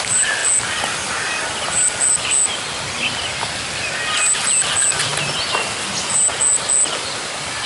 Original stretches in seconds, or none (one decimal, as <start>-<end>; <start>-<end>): 0.0-7.7